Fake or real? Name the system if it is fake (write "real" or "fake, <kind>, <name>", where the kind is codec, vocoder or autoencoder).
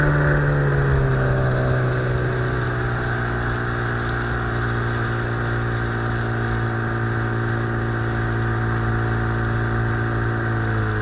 real